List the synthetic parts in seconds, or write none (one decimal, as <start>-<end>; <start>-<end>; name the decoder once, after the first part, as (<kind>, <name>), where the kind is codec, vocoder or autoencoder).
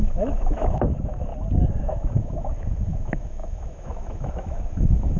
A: 0.0-1.3 (autoencoder, DAC-VAE); 1.8-5.2